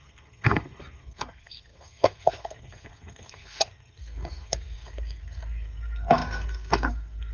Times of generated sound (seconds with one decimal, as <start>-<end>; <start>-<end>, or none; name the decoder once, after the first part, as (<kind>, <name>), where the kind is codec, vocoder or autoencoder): 0.0-7.3 (codec, SNAC)